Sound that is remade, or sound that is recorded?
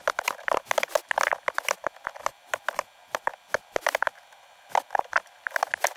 recorded